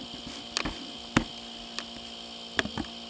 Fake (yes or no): no